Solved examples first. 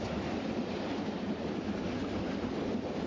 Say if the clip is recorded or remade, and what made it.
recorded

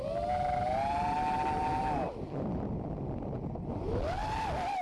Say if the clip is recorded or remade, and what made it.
recorded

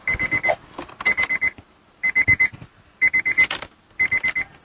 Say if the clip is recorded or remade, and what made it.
recorded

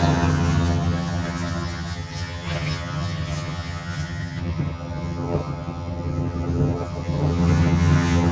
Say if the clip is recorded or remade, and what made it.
remade, vocoder, HiFi-GAN